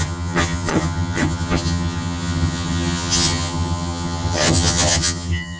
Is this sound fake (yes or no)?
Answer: yes